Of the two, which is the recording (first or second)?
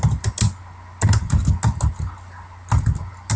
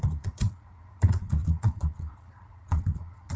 first